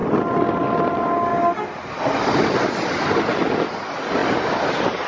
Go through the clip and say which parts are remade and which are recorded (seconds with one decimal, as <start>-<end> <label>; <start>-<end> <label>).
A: 0.0-5.1 recorded